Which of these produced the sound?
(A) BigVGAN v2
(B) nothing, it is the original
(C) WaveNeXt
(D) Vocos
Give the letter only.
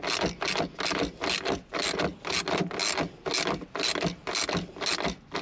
B